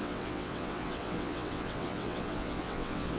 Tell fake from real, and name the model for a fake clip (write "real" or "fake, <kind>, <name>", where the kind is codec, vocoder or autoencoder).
fake, vocoder, WaveNeXt